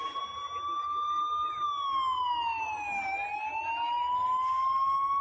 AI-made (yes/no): no